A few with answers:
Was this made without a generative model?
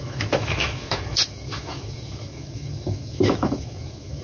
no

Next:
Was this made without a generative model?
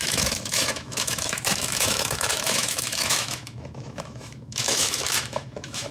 no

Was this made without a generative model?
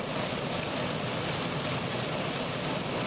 yes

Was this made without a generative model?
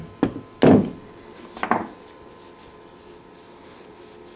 yes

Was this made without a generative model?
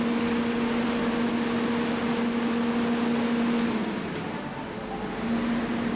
yes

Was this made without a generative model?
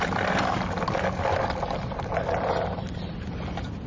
yes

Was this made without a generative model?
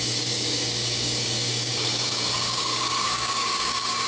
no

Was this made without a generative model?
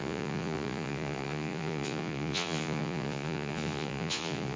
no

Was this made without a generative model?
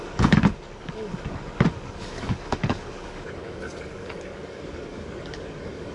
no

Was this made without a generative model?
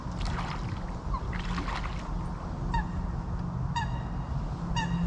yes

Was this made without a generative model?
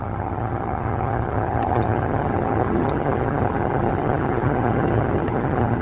no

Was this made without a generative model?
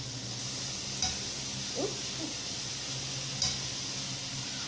yes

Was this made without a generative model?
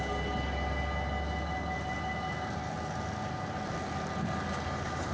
yes